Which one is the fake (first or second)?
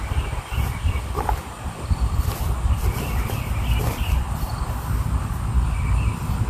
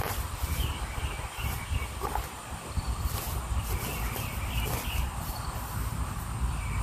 first